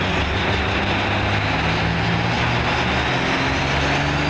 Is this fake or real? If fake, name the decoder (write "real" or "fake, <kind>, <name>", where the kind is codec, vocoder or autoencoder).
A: real